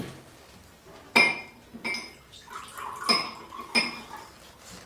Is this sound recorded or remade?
recorded